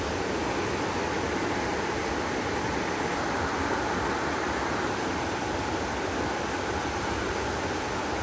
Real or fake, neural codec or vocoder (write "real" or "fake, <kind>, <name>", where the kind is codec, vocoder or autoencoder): real